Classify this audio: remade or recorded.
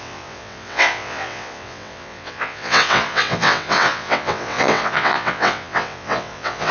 remade